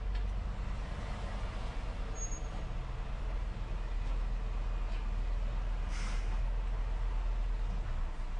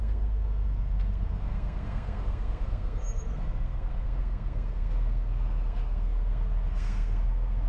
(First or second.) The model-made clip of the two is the second